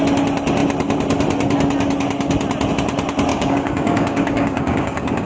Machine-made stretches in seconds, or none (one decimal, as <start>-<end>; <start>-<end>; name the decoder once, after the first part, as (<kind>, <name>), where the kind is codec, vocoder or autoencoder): 3.3-5.3 (codec, DAC)